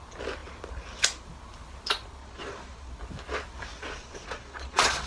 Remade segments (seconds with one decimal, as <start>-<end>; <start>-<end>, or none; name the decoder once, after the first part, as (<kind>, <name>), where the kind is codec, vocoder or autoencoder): 2.2-2.9 (vocoder, Vocos); 3.7-5.1